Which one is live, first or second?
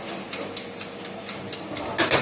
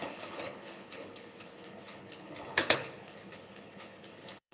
first